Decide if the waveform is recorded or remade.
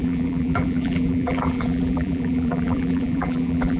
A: remade